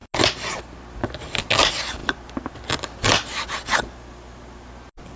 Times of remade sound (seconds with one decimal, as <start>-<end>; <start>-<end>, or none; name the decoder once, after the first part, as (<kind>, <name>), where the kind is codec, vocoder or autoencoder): none